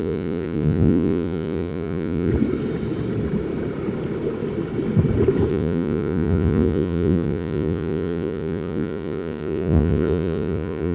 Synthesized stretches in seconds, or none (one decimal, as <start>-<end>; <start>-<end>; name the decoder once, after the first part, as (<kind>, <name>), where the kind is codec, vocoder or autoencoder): 0.0-2.3 (vocoder, Vocos); 5.5-10.9